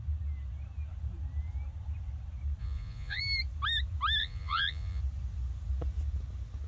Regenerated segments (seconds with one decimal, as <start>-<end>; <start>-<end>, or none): 2.6-3.2; 4.2-5.0